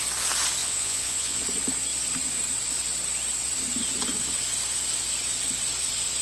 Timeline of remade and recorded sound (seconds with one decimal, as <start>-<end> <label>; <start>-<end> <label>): 0.0-0.6 recorded; 0.6-1.4 remade; 1.4-6.2 recorded